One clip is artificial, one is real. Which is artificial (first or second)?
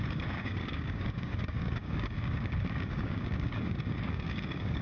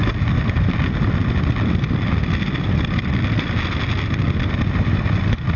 first